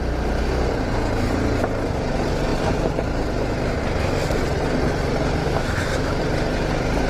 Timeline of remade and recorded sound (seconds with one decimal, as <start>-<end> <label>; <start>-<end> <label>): 0.0-5.4 recorded; 5.4-6.2 remade; 6.2-7.1 recorded